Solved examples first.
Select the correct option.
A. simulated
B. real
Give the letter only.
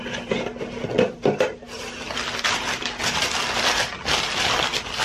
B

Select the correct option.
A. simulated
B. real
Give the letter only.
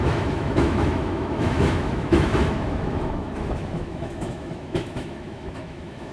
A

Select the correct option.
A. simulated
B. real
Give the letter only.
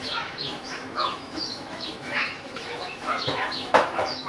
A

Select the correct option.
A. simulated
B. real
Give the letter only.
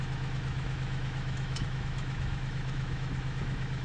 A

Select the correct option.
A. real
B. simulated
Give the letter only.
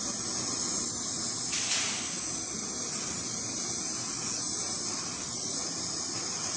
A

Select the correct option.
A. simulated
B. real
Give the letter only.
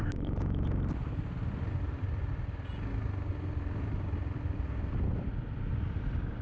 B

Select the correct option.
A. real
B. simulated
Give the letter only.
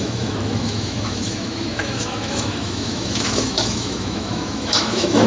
B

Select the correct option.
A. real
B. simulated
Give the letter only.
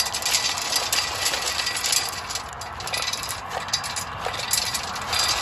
A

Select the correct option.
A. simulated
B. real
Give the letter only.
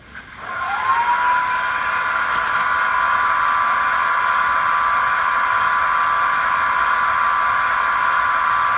B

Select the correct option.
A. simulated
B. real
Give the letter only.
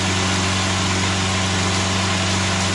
B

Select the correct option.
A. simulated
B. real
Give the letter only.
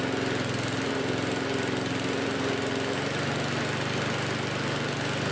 B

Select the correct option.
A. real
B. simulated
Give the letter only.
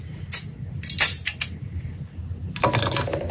A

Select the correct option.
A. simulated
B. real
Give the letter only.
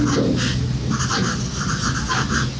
B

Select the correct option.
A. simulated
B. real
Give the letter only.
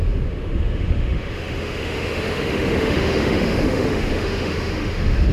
A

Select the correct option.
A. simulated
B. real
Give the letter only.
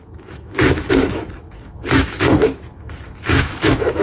A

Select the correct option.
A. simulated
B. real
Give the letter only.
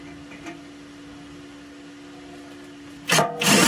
B